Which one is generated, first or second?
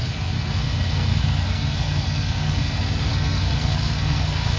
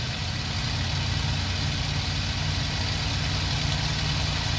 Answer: first